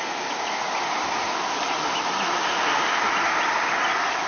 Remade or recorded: recorded